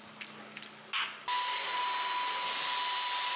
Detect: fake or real real